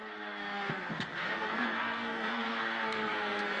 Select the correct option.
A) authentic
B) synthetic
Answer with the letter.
B